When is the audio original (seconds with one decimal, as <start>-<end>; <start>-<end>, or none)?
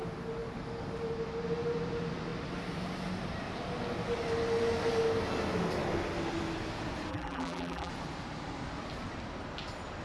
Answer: 0.0-7.1; 7.9-10.0